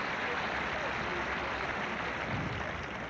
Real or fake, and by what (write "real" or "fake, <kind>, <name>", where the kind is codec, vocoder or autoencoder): real